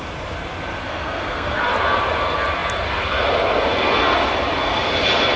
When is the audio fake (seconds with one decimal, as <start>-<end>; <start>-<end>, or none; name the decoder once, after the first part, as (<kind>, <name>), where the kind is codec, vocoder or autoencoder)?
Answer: 0.8-1.6 (codec, SNAC)